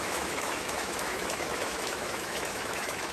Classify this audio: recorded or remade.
remade